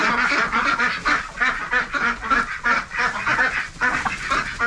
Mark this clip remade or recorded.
recorded